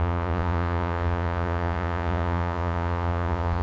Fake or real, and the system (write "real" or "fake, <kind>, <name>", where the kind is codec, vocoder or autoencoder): fake, vocoder, Vocos